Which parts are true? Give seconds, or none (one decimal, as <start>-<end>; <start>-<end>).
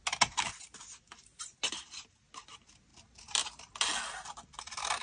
0.0-5.0